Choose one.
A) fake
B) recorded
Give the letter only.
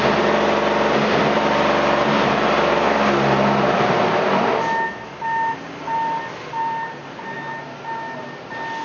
A